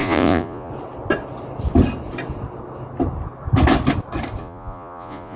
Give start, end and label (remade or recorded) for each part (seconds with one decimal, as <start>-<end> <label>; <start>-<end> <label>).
0.0-0.7 remade; 0.7-4.4 recorded; 4.4-5.4 remade